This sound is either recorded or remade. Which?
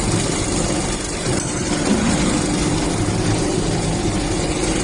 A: recorded